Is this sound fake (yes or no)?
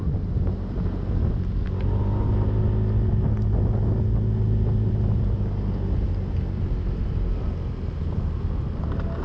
no